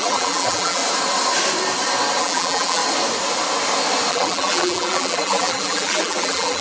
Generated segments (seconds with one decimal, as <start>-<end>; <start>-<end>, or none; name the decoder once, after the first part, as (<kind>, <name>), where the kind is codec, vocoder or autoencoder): 0.0-0.8 (vocoder, BigVGAN v2); 2.2-2.8; 4.1-6.6

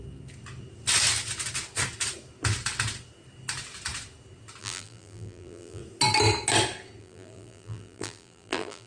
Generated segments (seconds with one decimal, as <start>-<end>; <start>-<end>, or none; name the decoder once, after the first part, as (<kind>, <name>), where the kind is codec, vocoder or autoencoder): 4.6-5.8 (vocoder, BigVGAN v2); 7.0-8.9

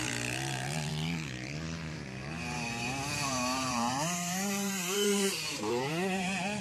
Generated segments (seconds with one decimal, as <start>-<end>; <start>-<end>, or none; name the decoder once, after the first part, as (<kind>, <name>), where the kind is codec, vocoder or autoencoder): 0.0-0.9 (vocoder, BigVGAN v2); 3.1-6.6

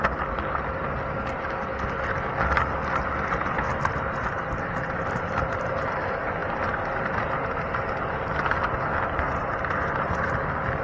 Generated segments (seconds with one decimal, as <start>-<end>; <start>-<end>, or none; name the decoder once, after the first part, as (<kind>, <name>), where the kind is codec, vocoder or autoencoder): none

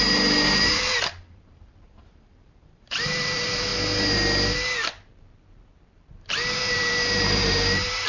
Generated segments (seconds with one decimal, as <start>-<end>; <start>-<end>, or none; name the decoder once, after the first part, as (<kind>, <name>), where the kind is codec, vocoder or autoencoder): 0.0-3.7 (vocoder, BigVGAN v2); 6.6-8.1